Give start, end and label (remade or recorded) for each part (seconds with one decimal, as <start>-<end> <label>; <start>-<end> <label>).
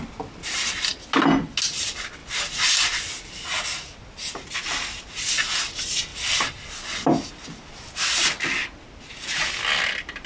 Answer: 0.0-10.3 recorded